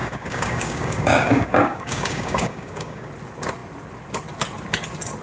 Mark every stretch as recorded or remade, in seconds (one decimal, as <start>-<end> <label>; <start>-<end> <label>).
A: 0.0-3.1 remade; 3.1-5.2 recorded